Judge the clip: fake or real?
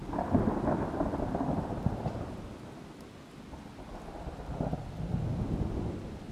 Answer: real